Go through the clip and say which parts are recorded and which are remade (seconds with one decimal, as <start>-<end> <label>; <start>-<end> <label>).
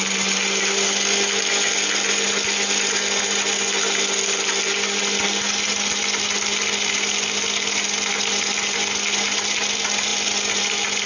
0.0-11.1 recorded